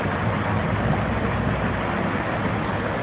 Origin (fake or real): real